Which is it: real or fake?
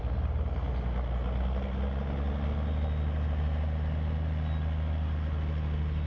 real